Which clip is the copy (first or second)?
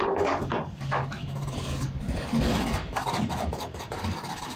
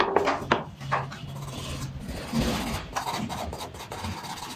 first